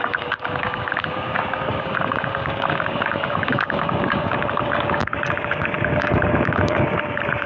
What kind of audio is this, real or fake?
fake